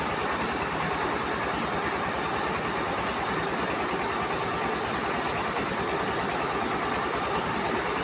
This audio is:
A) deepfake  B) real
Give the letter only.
B